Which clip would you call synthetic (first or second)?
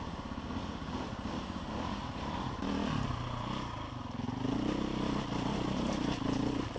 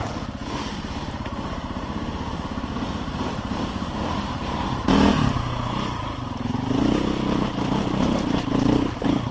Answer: second